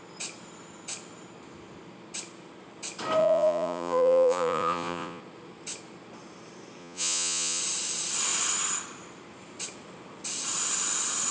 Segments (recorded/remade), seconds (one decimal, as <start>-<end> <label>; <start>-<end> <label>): 0.0-3.2 recorded; 3.2-5.2 remade; 5.2-6.8 recorded; 6.8-7.6 remade; 7.6-11.3 recorded